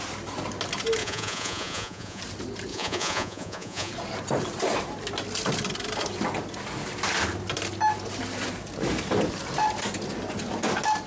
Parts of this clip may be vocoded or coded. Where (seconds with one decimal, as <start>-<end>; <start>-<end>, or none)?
1.0-2.2; 2.7-3.9